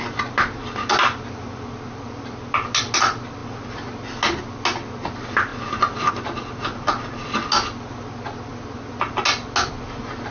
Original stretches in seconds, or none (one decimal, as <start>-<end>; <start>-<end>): 0.0-10.3